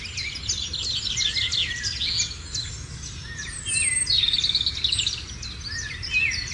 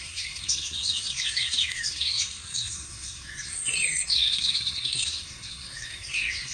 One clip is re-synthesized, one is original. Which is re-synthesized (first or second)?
second